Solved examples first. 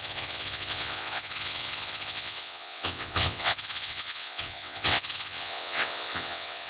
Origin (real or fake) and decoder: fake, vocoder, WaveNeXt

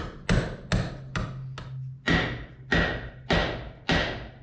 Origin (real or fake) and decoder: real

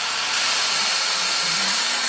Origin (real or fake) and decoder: fake, vocoder, BigVGAN v2